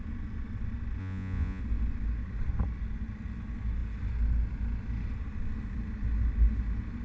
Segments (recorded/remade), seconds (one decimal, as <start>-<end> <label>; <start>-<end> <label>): 0.0-1.0 recorded; 1.0-1.6 remade; 1.6-7.0 recorded